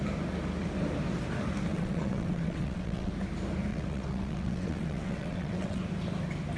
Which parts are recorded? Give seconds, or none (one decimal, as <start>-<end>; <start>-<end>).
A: 0.0-1.7; 3.1-3.7; 5.8-6.6